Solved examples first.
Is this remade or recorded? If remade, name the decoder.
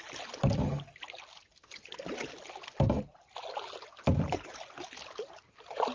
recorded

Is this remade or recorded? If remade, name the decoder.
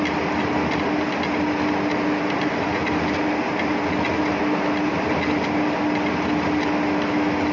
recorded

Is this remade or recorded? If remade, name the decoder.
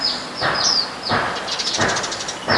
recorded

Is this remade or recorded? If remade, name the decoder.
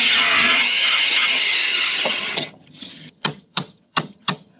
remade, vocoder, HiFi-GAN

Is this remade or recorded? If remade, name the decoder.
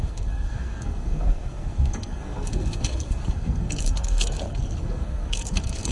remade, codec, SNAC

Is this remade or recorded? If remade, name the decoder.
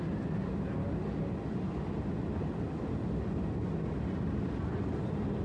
recorded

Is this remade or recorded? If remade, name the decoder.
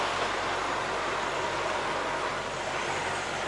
remade, vocoder, BigVGAN v2